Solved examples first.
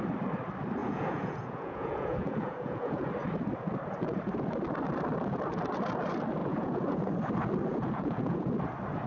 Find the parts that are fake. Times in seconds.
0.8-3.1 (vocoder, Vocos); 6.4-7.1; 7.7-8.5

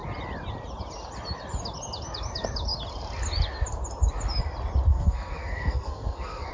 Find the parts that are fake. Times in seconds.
4.9-6.5 (codec, SNAC)

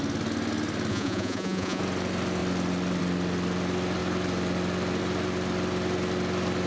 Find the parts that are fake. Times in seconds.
0.9-1.8 (vocoder, Vocos)

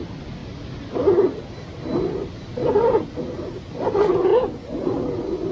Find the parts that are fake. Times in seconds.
none

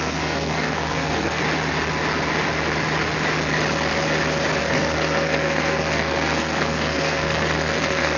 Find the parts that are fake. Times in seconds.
0.0-1.4 (codec, SNAC); 4.6-8.2